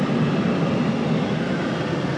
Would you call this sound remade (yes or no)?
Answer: no